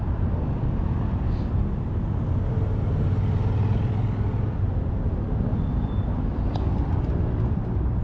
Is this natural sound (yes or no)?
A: yes